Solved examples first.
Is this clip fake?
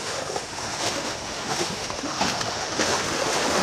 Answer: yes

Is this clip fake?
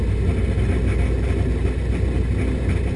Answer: no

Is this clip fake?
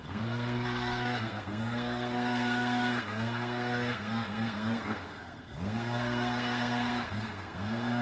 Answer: yes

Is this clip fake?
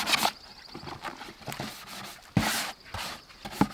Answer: no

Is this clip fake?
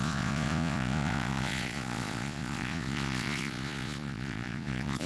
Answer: yes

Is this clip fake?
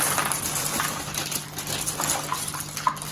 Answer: no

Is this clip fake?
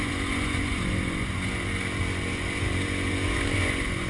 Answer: yes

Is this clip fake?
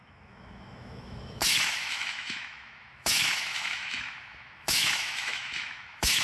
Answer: yes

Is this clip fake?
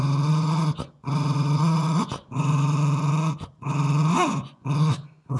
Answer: yes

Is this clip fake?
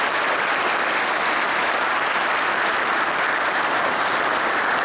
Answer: no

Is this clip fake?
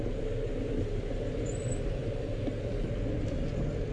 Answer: no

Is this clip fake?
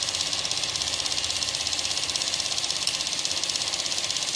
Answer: no